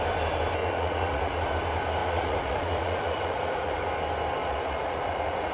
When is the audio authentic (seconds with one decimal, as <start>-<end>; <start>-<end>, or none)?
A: 0.0-0.6; 1.5-2.0; 3.9-4.4